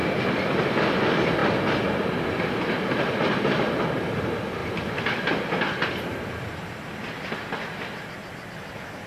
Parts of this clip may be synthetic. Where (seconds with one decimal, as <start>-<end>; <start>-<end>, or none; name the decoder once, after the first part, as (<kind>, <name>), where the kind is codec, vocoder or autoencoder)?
none